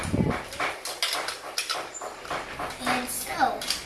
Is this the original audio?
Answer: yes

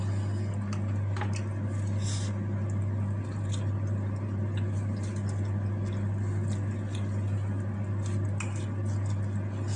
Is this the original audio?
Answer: yes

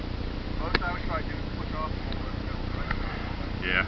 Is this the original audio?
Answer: yes